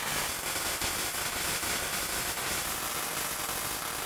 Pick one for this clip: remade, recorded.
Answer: recorded